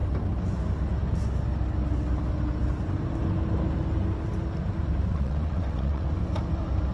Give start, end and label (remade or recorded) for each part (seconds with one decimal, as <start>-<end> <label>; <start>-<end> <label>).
0.0-5.1 recorded; 5.1-6.1 remade; 6.1-6.9 recorded